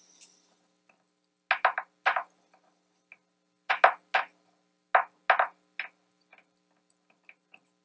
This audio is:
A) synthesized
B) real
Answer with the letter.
B